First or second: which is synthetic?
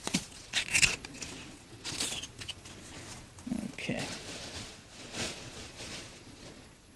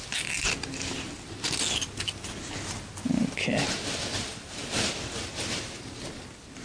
first